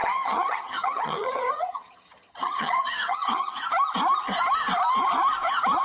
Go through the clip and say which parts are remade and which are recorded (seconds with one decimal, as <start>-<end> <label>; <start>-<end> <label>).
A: 0.0-3.5 remade; 3.5-5.8 recorded